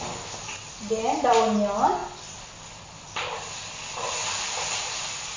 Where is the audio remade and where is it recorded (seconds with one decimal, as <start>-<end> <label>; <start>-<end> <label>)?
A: 0.0-5.4 recorded

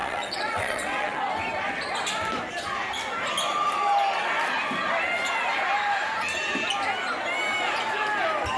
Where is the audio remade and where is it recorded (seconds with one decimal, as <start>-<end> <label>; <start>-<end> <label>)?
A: 0.0-1.2 remade; 1.2-8.6 recorded

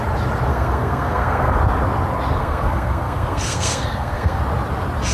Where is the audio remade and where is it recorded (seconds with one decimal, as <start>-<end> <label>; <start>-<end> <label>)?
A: 0.0-0.5 recorded; 0.5-1.6 remade; 1.6-2.4 recorded; 2.4-4.4 remade; 4.4-5.1 recorded

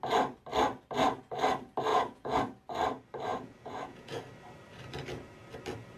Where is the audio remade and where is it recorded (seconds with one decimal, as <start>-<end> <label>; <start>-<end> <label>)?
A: 0.0-1.9 recorded; 1.9-2.4 remade; 2.4-3.3 recorded; 3.3-4.2 remade; 4.2-6.0 recorded